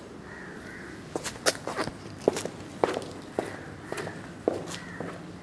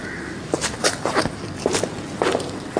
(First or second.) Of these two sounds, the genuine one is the first